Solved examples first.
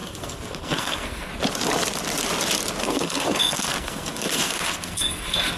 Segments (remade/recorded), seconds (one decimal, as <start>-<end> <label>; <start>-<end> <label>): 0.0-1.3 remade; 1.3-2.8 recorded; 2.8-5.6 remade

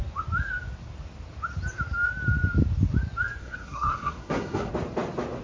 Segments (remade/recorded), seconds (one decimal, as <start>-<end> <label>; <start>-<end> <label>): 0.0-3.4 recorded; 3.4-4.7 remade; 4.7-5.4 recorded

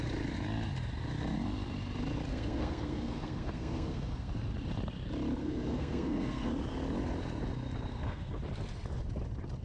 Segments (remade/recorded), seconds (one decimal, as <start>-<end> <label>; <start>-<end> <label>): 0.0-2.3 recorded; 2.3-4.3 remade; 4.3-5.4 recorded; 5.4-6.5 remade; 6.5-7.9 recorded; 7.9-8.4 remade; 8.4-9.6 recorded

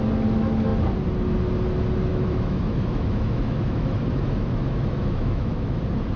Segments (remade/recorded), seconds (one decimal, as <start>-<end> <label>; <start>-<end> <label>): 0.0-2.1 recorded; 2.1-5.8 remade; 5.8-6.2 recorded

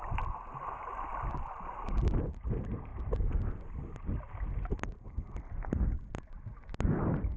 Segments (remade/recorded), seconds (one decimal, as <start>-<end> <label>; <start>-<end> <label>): 0.0-7.4 recorded

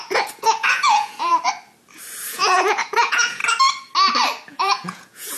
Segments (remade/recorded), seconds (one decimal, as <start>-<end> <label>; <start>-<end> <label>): 0.0-1.3 remade; 1.3-2.3 recorded; 2.3-3.4 remade; 3.4-4.5 recorded; 4.5-5.4 remade